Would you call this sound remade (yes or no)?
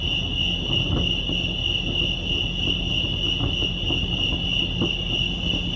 no